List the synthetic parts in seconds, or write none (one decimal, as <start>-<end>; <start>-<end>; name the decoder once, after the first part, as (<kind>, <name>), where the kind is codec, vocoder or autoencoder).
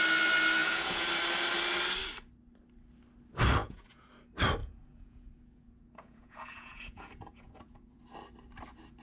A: 0.6-1.1 (vocoder, Vocos); 3.6-4.1; 4.6-8.0